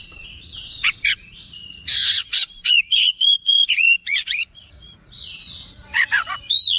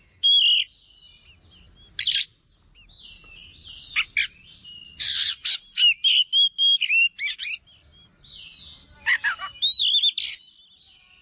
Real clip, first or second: second